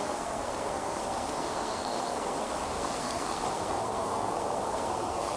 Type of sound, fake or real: fake